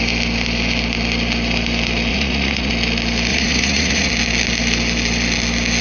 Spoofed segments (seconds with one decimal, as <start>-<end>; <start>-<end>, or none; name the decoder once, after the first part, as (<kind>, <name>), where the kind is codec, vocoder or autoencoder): 2.1-2.7 (vocoder, Vocos); 3.3-4.1